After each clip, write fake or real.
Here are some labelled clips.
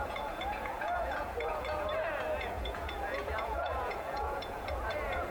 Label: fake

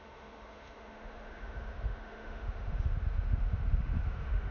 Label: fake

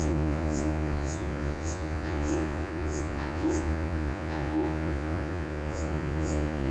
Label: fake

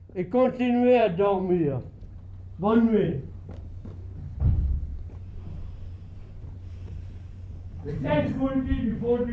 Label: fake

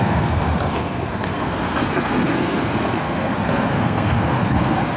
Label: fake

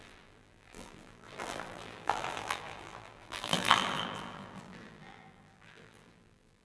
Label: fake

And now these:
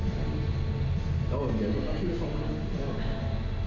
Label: real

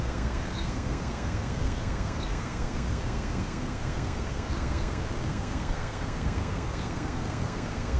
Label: fake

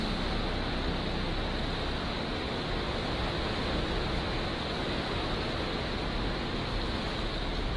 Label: real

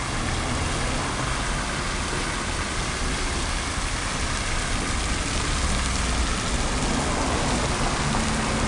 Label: real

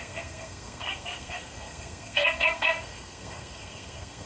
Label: fake